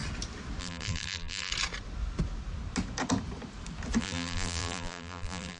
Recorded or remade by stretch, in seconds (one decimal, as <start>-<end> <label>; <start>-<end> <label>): 0.0-0.6 recorded; 0.6-1.5 remade; 1.5-4.0 recorded; 4.0-5.6 remade